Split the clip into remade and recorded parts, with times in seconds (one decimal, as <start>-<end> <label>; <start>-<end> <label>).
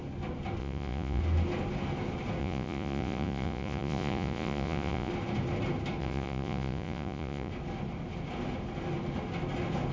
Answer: 0.0-0.6 recorded; 0.6-1.2 remade; 1.2-2.4 recorded; 2.4-5.1 remade; 5.1-6.0 recorded; 6.0-7.5 remade; 7.5-9.9 recorded